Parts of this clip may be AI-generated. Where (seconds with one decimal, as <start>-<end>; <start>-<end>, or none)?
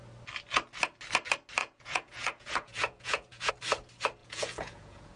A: 1.6-3.5; 4.2-5.2